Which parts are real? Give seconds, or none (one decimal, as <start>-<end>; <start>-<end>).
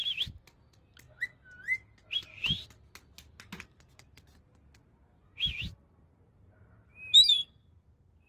0.0-8.3